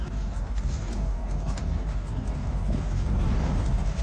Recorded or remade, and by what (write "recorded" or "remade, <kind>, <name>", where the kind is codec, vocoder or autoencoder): remade, codec, DAC